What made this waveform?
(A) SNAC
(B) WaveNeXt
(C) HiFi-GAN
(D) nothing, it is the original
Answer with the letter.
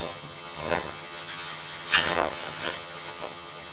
C